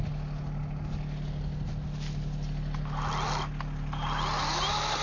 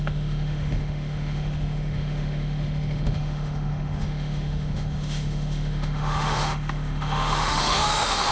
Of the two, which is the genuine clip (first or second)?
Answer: first